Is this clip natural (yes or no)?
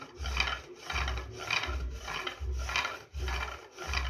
yes